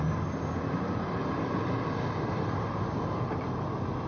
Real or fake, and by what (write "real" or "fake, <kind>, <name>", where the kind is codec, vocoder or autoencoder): real